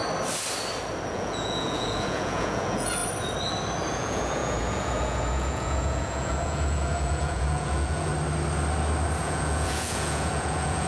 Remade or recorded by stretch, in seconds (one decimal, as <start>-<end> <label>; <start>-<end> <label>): 0.0-1.1 recorded; 1.1-3.0 remade; 3.0-3.9 recorded; 3.9-8.1 remade; 8.1-9.2 recorded; 9.2-10.9 remade